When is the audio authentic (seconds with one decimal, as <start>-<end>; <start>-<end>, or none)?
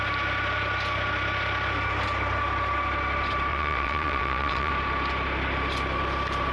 0.0-3.5; 4.7-6.5